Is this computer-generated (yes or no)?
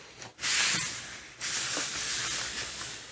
no